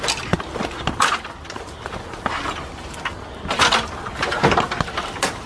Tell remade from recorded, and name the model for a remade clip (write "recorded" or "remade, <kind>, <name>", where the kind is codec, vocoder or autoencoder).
recorded